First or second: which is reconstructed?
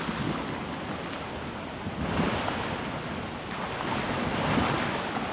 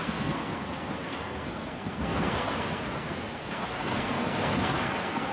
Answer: second